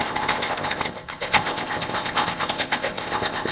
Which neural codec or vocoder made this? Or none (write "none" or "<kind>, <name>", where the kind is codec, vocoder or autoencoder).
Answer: codec, ZipCodec